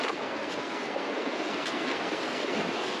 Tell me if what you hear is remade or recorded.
remade